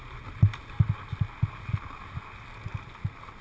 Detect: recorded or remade recorded